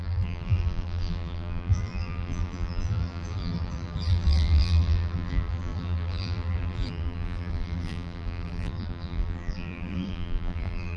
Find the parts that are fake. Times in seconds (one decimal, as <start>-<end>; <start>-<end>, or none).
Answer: 0.0-11.0